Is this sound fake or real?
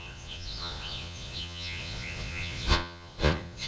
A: fake